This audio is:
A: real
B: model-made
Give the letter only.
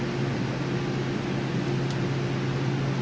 A